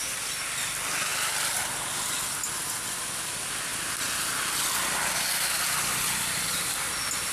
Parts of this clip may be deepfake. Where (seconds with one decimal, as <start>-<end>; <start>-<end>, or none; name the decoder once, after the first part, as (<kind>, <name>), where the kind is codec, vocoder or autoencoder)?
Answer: none